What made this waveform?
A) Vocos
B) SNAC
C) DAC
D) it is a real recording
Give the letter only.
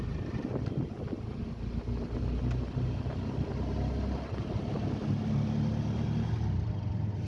D